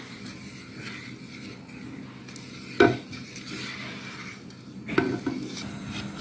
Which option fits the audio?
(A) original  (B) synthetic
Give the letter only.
A